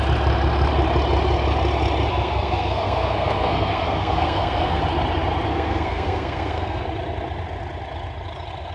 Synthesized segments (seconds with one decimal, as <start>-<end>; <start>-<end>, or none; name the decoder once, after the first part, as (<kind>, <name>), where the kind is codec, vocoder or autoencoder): 2.1-4.8 (codec, SNAC); 5.5-6.8